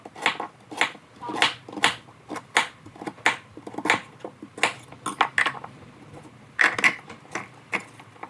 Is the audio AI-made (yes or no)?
no